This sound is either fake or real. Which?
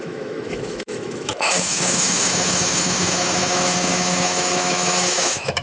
fake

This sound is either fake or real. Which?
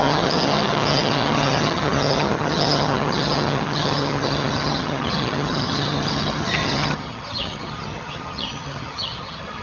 fake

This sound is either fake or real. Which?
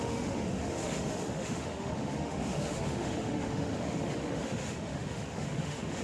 fake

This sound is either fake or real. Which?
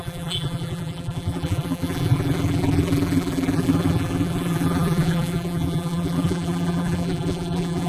fake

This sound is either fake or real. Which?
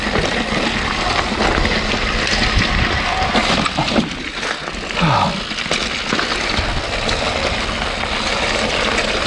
real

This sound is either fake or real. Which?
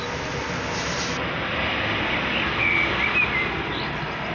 real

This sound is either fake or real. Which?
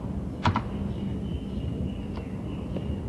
real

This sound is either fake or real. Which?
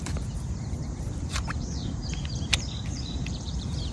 fake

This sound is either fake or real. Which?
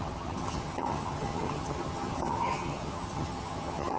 fake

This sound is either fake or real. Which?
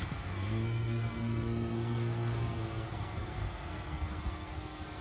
fake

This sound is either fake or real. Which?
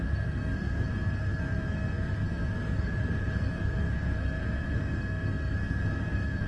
fake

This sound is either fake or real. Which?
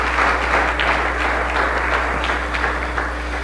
real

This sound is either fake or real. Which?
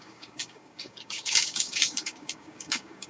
fake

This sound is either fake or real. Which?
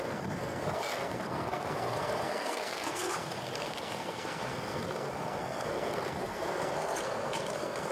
fake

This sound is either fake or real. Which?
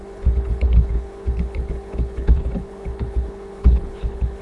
fake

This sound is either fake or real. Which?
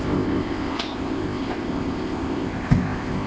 fake